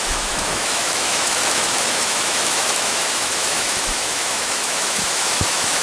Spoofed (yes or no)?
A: yes